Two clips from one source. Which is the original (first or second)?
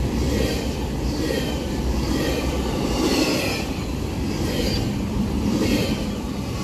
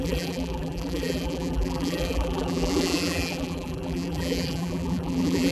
first